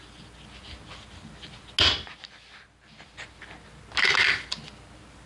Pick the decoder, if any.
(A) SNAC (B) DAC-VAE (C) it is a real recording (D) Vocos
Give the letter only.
C